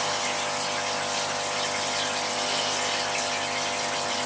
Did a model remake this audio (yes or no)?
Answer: no